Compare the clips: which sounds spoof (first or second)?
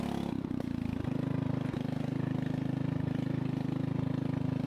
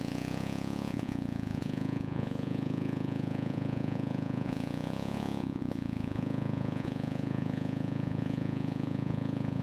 second